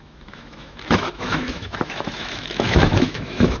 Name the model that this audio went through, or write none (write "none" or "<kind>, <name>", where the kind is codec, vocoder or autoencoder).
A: autoencoder, DAC-VAE